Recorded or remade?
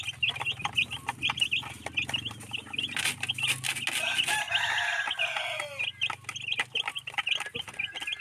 recorded